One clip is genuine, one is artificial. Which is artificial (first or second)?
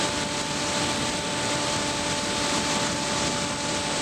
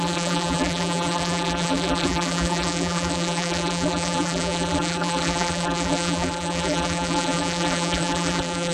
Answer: second